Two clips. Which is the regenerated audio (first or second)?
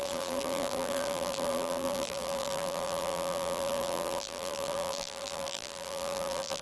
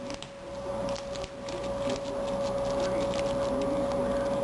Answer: first